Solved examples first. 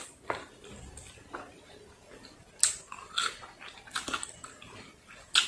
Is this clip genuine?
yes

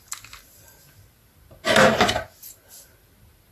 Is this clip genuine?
yes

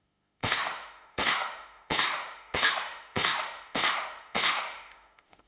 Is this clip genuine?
no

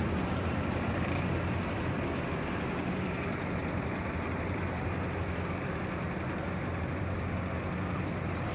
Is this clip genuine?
no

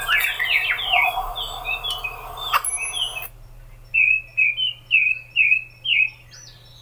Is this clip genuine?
yes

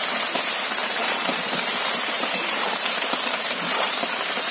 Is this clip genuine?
no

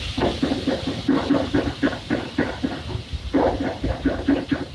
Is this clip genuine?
no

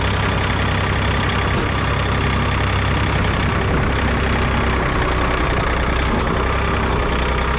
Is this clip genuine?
yes